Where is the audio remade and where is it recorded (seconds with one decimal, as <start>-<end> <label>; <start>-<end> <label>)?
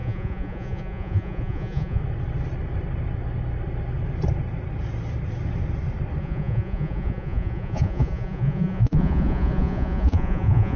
0.0-2.0 remade; 2.0-6.2 recorded; 6.2-10.8 remade